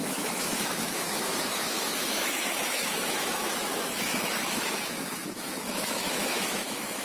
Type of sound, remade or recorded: remade